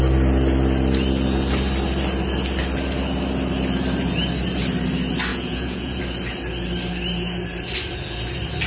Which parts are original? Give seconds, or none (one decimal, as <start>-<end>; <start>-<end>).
0.0-5.3; 6.0-8.7